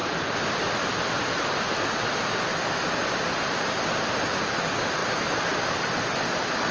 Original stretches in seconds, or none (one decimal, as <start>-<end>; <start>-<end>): 0.0-6.7